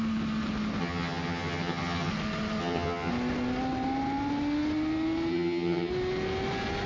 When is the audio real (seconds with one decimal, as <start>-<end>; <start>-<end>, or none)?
0.0-0.8; 2.1-2.6; 3.1-5.3; 5.9-6.9